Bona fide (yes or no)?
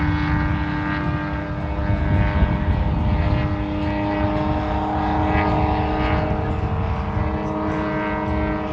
yes